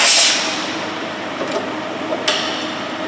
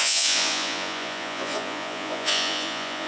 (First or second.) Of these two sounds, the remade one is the second